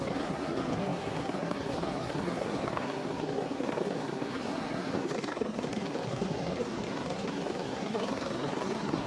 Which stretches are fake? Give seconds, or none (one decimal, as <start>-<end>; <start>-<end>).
0.0-9.1